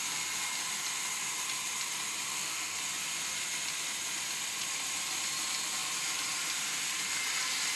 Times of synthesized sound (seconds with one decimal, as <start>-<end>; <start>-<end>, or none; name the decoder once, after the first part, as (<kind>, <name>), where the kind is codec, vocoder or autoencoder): 2.3-2.8 (codec, SNAC)